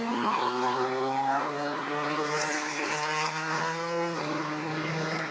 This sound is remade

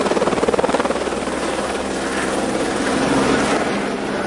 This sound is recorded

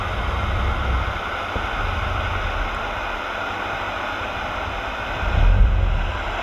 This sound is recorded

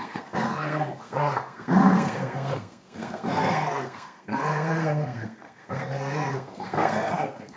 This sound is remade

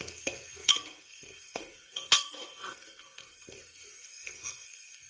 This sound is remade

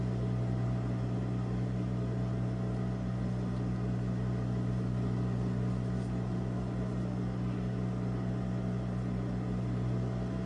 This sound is recorded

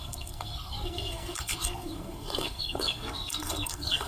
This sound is remade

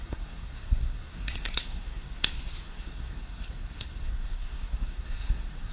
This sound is remade